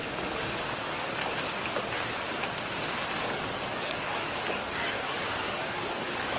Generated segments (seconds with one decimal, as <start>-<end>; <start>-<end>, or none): 0.5-1.2; 3.3-6.4